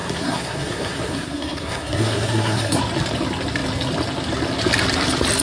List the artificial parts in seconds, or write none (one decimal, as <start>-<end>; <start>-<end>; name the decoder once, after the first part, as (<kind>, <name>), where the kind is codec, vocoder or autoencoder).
0.0-2.8 (codec, SNAC)